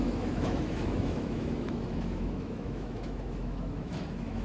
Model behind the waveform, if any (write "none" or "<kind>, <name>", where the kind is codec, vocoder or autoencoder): autoencoder, DAC-VAE